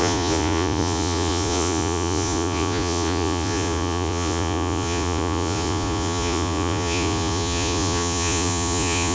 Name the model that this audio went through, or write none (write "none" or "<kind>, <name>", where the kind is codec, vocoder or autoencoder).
vocoder, Vocos